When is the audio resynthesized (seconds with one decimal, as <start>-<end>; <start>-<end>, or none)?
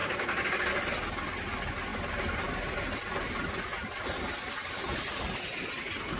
0.0-0.7